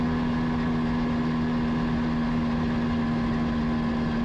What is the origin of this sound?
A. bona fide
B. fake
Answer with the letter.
A